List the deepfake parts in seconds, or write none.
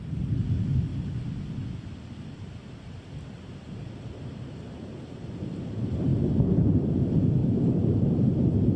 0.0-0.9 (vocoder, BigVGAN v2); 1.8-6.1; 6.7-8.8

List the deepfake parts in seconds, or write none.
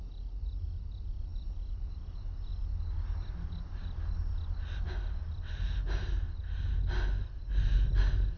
none